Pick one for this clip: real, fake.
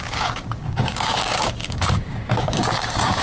fake